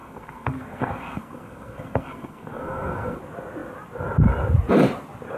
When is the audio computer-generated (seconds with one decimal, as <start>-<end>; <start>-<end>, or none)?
0.0-3.2